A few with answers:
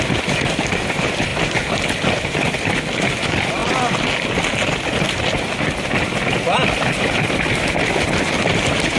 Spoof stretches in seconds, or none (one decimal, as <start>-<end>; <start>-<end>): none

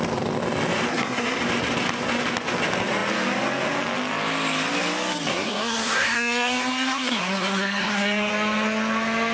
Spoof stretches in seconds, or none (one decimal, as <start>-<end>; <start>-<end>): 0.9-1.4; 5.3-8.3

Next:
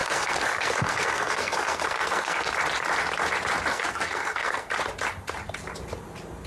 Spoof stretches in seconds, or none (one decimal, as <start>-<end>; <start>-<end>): 0.0-2.5; 3.7-4.7